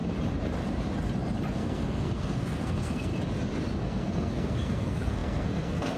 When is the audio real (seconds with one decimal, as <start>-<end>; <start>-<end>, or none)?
0.0-1.5; 3.1-3.8